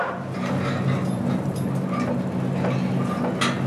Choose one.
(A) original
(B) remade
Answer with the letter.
A